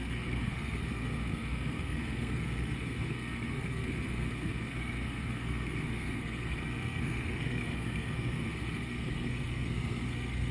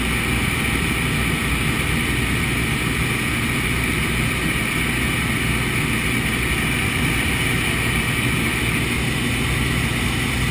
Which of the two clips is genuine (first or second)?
second